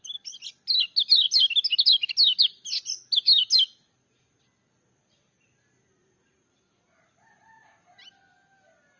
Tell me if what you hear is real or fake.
real